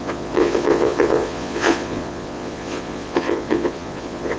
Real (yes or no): no